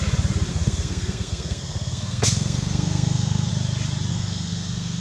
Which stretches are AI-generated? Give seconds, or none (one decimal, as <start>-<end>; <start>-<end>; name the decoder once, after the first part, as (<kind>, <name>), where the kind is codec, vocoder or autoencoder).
0.5-3.5 (codec, SNAC); 4.1-5.0

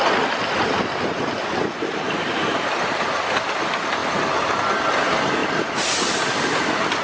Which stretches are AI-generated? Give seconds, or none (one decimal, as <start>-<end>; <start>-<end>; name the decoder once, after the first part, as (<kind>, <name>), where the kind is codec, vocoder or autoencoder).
none